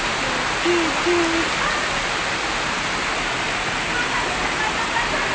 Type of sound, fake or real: real